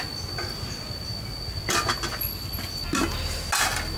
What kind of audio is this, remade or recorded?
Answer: recorded